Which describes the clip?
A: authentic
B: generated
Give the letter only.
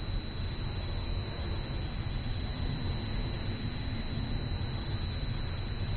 A